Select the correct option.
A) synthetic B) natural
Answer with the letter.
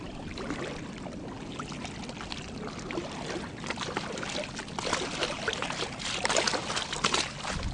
B